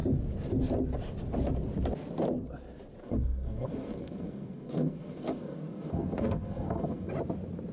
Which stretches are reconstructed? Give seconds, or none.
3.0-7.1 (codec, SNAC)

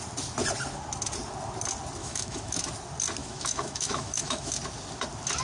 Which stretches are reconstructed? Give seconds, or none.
2.0-2.7 (autoencoder, DAC-VAE); 3.2-4.5

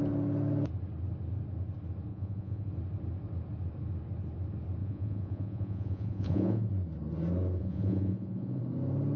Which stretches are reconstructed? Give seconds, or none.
2.1-2.7 (vocoder, Vocos); 4.8-6.7; 7.6-8.6

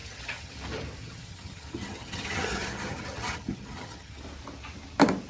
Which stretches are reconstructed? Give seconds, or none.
0.0-0.6 (vocoder, HiFi-GAN); 1.0-4.2

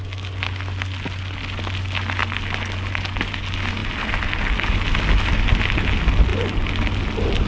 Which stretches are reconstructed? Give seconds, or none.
none

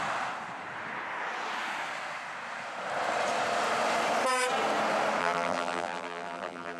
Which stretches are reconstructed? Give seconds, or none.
5.2-6.8 (vocoder, BigVGAN v2)

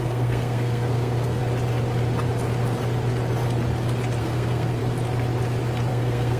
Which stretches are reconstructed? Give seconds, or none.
0.0-1.4 (codec, SNAC); 4.2-4.8; 5.9-6.4

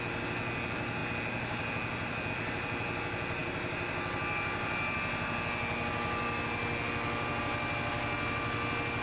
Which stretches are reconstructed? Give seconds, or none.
none